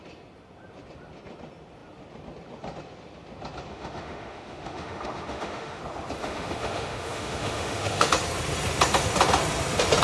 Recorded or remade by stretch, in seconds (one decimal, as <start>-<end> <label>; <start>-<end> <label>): 0.0-3.7 recorded; 3.7-5.8 remade; 5.8-6.2 recorded; 6.2-8.1 remade; 8.1-10.0 recorded